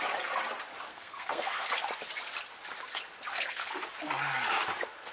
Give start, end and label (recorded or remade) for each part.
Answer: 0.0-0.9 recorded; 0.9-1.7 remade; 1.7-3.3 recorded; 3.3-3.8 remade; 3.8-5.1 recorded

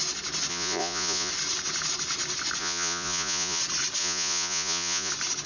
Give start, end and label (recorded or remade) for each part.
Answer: 0.0-0.5 recorded; 0.5-1.3 remade; 1.3-2.6 recorded; 2.6-3.6 remade; 3.6-4.0 recorded; 4.0-5.1 remade; 5.1-5.5 recorded

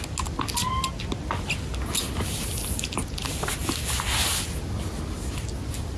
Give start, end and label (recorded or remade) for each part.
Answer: 0.0-6.0 recorded